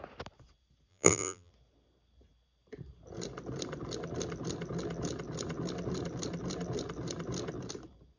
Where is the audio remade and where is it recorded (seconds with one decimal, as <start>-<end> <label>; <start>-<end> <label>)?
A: 0.0-0.9 recorded; 0.9-1.5 remade; 1.5-8.2 recorded